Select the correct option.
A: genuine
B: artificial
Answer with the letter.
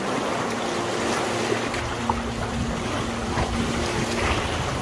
A